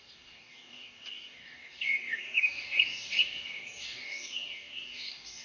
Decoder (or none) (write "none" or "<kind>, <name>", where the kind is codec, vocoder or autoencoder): codec, DAC